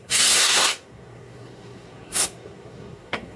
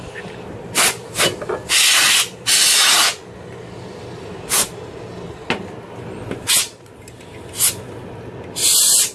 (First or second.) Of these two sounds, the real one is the second